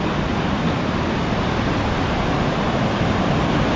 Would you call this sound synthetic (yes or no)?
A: no